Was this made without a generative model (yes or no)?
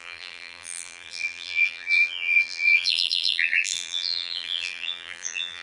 no